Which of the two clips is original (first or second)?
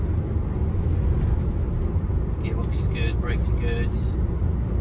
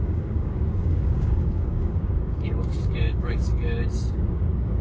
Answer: first